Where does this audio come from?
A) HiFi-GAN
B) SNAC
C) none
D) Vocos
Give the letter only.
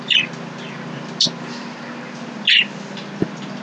C